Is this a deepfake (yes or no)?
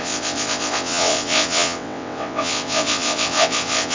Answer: yes